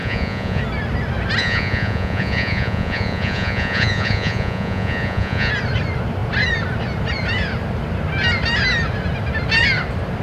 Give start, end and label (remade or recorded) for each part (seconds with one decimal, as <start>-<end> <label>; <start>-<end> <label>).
0.0-0.6 remade; 0.6-1.4 recorded; 1.4-5.5 remade; 5.5-10.2 recorded